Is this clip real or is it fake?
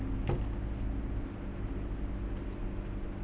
real